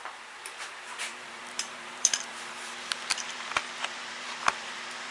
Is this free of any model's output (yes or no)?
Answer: no